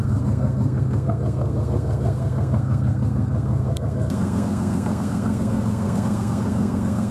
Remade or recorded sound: remade